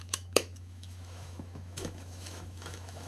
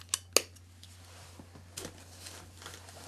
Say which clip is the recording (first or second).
second